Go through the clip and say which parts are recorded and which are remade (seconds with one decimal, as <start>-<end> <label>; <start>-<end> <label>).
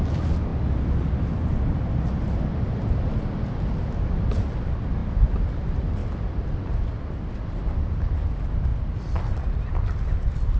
0.0-10.6 recorded